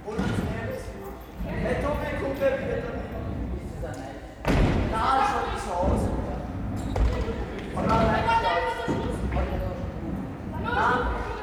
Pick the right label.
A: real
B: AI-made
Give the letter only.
B